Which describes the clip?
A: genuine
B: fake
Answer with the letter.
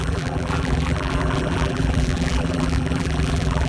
B